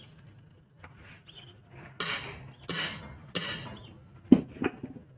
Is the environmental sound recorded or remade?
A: recorded